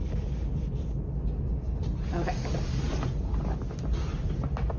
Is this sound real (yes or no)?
yes